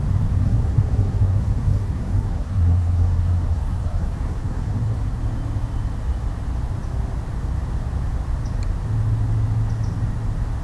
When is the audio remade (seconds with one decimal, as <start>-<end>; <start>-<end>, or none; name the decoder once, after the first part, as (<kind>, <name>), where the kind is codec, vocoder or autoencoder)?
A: 0.4-5.2 (codec, SNAC)